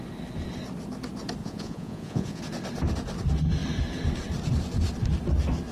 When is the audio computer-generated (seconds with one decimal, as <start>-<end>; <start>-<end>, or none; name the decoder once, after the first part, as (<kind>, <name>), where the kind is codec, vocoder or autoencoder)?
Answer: 1.4-2.4 (vocoder, Vocos)